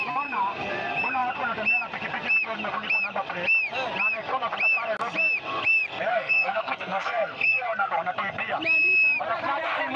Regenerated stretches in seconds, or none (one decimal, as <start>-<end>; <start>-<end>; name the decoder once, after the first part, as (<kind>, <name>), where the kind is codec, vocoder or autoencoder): 6.1-7.9 (codec, SNAC)